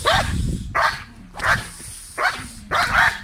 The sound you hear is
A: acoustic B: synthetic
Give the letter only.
A